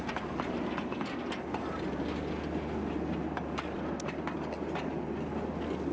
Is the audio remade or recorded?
recorded